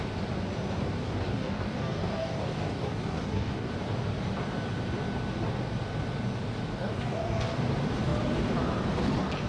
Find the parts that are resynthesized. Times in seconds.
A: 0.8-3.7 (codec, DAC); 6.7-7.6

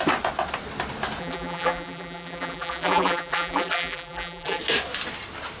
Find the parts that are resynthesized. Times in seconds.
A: 1.2-4.6 (vocoder, BigVGAN v2)

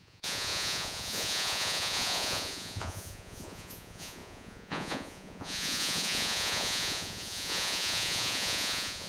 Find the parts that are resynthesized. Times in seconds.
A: 0.0-9.1 (vocoder, Vocos)

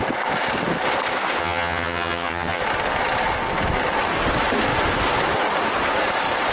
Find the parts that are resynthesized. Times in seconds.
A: 1.4-2.6 (vocoder, HiFi-GAN)

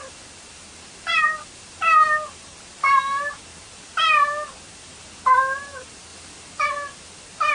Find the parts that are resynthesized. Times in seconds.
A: none

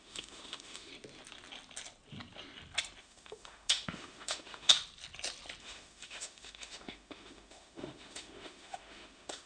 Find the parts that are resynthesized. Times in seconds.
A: 0.0-0.9 (autoencoder, DAC-VAE); 3.0-4.7; 5.6-9.5

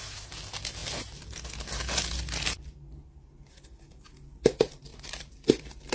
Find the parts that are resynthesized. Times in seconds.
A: 4.9-5.9 (vocoder, BigVGAN v2)